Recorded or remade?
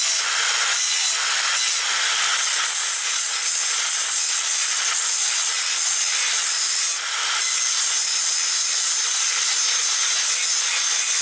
recorded